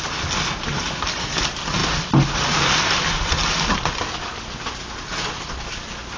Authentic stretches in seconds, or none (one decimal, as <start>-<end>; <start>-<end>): 0.0-6.2